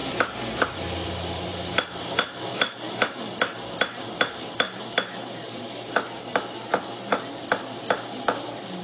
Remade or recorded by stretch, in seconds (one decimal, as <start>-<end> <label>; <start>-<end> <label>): 0.0-1.7 remade; 1.7-8.8 recorded